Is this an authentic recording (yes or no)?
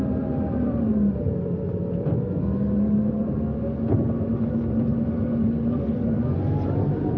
yes